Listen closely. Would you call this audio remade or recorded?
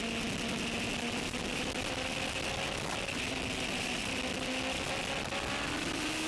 recorded